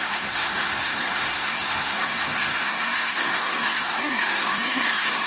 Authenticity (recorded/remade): remade